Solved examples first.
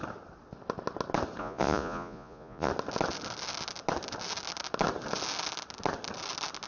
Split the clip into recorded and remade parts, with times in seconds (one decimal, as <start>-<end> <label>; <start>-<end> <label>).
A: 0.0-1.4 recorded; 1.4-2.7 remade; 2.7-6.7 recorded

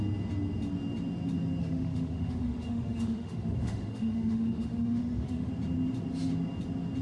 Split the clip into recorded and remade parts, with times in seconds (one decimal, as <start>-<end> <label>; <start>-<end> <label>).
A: 0.0-1.6 recorded; 1.6-5.5 remade; 5.5-7.0 recorded

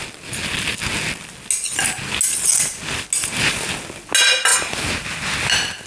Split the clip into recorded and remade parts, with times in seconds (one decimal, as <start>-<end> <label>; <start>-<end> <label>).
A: 0.0-5.9 recorded

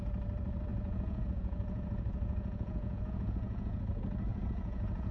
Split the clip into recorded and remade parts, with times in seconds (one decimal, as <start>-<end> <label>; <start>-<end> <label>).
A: 0.0-0.7 recorded; 0.7-3.8 remade; 3.8-4.3 recorded; 4.3-5.1 remade

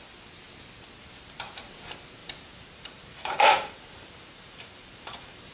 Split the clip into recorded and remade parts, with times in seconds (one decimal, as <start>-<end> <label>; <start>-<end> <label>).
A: 0.0-2.2 recorded; 2.2-5.5 remade

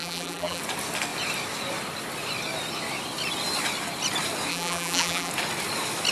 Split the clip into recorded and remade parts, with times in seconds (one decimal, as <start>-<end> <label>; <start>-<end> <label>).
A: 0.0-0.6 remade; 0.6-4.5 recorded; 4.5-5.3 remade; 5.3-6.1 recorded